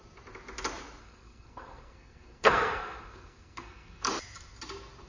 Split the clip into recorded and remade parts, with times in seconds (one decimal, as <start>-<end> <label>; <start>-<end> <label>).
0.0-1.0 recorded; 1.0-4.1 remade; 4.1-5.1 recorded